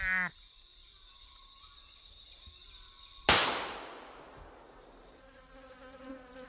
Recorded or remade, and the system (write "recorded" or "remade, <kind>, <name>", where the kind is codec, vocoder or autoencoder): recorded